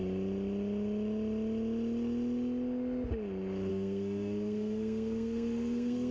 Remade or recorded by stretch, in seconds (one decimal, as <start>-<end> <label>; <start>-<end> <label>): 0.0-3.7 recorded; 3.7-6.1 remade